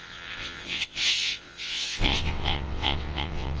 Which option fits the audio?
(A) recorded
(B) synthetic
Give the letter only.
B